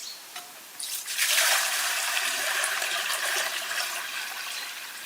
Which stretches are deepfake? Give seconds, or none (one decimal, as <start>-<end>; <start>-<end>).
0.0-3.1